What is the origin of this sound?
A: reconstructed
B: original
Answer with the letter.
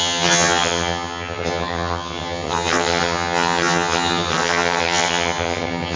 A